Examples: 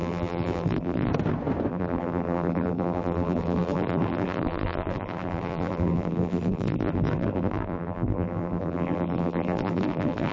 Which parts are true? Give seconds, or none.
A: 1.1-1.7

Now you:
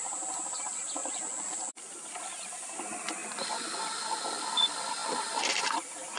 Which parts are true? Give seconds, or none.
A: 1.0-1.7; 3.2-4.4; 5.0-5.5

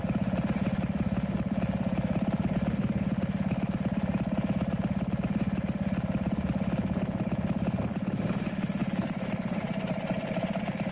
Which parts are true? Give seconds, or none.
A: 0.0-8.8; 9.3-10.9

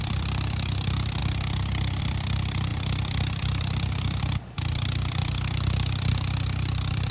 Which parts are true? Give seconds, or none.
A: 1.2-2.0